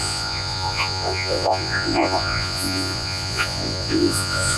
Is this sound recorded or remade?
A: remade